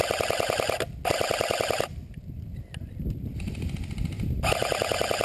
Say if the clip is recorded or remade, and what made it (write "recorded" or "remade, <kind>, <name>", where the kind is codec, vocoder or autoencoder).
recorded